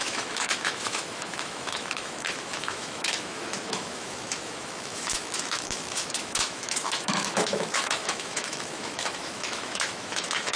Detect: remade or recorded remade